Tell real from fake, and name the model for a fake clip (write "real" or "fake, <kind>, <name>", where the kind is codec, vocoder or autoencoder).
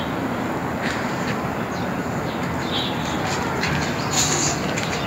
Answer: real